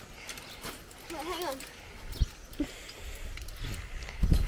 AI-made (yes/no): no